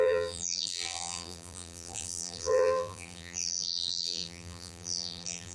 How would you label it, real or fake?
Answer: fake